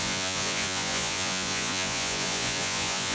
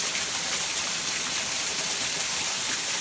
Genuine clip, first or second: second